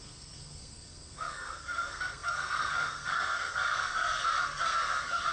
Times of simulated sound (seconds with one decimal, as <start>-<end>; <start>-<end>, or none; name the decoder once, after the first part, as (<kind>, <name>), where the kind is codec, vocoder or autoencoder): 0.0-5.3 (codec, SNAC)